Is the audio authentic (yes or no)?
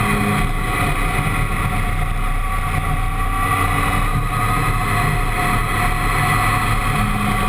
yes